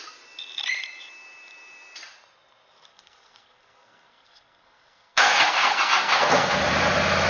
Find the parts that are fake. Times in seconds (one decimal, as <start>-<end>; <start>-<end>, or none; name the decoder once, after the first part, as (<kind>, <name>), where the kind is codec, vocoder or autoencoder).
2.9-6.5 (codec, SNAC)